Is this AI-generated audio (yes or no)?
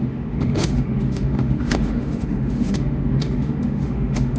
yes